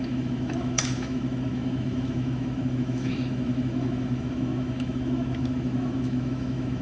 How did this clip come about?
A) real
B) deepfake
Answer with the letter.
B